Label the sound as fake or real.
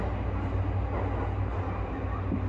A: real